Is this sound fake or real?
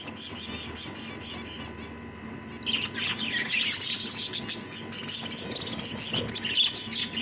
real